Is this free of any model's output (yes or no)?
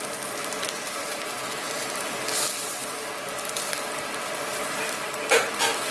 no